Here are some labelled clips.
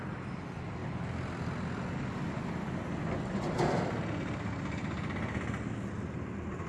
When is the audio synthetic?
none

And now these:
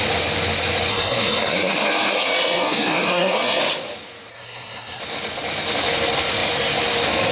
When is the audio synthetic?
0.9-3.6 (codec, SNAC); 4.3-5.0

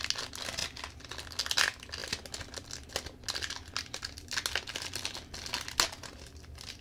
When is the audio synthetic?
none

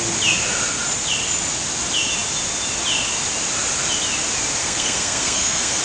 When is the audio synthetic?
4.6-5.8 (codec, SNAC)

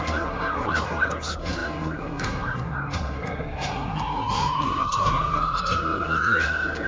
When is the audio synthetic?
0.0-6.9 (codec, SNAC)

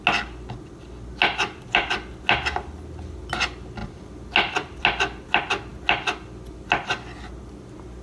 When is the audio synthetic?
none

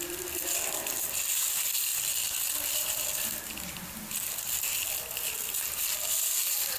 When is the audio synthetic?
none